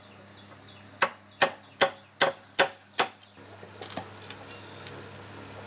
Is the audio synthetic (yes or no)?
no